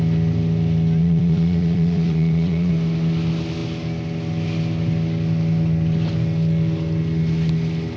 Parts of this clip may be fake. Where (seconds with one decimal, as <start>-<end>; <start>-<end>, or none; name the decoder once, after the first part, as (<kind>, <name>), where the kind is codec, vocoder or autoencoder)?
1.0-2.7 (vocoder, Vocos)